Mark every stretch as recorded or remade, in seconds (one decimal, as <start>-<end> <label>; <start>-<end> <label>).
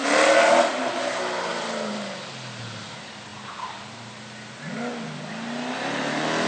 0.0-1.0 remade; 1.0-1.5 recorded; 1.5-2.3 remade; 2.3-6.5 recorded